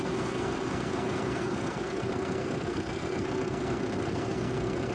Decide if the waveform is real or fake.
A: fake